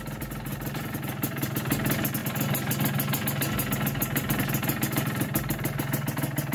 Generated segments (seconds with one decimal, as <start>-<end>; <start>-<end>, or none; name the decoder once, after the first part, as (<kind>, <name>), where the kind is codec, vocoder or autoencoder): 0.5-1.5 (vocoder, BigVGAN v2); 4.0-5.8